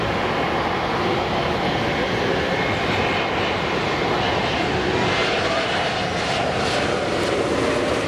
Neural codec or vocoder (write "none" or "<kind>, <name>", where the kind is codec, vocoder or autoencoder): none